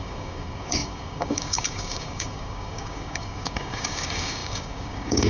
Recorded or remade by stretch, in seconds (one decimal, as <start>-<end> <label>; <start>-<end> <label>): 0.0-5.3 remade